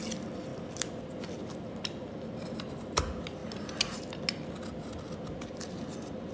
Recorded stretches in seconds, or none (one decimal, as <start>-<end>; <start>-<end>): 0.0-6.3